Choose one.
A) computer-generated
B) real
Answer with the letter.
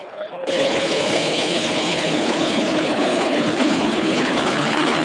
A